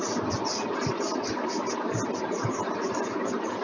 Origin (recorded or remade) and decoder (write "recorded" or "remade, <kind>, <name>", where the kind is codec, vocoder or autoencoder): recorded